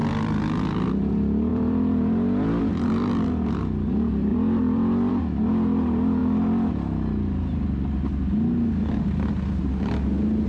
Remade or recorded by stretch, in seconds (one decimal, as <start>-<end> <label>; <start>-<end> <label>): 0.0-1.1 remade; 1.1-1.5 recorded; 1.5-2.6 remade; 2.6-4.3 recorded; 4.3-5.1 remade; 5.1-10.5 recorded